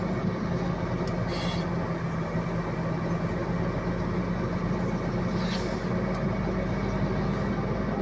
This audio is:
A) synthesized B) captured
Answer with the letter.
B